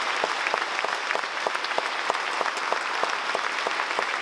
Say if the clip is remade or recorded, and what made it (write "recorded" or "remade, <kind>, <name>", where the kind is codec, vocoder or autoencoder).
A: recorded